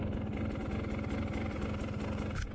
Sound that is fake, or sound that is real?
real